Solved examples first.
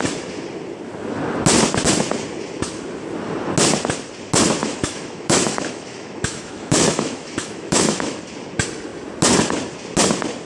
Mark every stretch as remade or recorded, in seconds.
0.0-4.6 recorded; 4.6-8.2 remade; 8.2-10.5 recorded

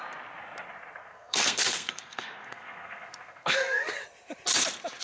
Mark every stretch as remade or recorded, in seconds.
0.0-1.0 recorded; 1.0-4.0 remade; 4.0-5.0 recorded

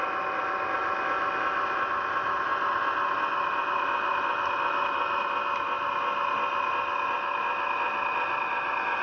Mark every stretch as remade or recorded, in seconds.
0.0-9.0 recorded

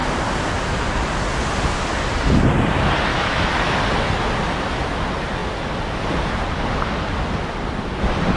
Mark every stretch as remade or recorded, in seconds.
0.0-3.1 recorded; 3.1-3.8 remade; 3.8-8.4 recorded

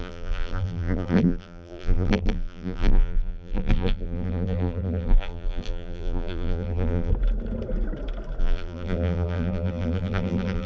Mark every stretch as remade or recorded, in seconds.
0.0-7.1 remade; 7.1-8.4 recorded; 8.4-10.7 remade

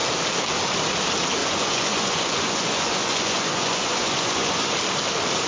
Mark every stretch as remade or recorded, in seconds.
0.0-1.4 recorded; 1.4-4.7 remade; 4.7-5.5 recorded